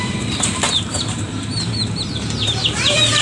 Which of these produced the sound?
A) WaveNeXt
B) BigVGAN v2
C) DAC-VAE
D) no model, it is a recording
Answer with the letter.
B